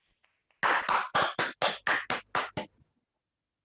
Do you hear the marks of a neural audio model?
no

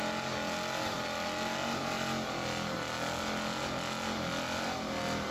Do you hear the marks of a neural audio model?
no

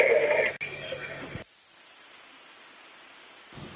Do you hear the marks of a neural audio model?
no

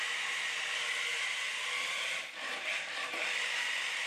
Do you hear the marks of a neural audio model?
yes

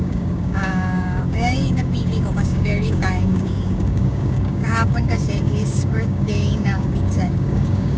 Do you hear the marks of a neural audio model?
yes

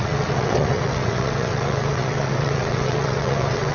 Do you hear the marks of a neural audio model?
yes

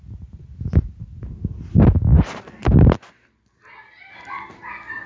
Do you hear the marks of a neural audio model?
no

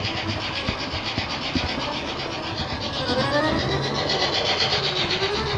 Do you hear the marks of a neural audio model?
no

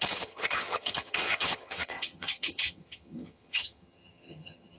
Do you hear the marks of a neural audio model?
yes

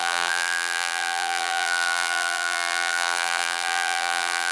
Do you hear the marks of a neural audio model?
yes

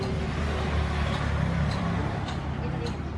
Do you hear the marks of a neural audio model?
no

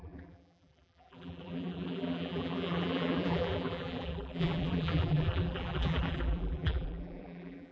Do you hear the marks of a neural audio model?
yes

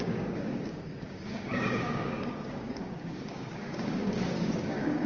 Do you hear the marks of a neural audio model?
yes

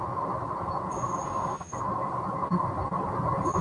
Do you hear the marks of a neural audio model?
no